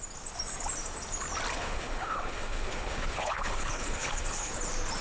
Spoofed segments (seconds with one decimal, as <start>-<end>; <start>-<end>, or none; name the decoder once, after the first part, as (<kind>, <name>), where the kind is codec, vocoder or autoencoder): 1.5-4.5 (codec, HILCodec)